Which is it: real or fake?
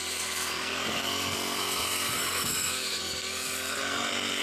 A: fake